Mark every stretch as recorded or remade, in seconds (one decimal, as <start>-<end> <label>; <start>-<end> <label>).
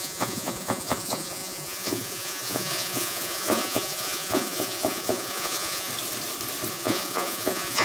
0.0-5.9 remade; 5.9-6.7 recorded; 6.7-7.8 remade